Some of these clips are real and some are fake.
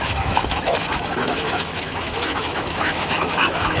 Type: fake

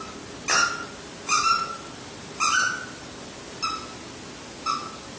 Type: real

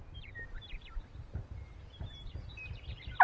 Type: real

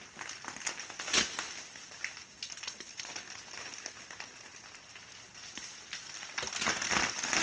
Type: real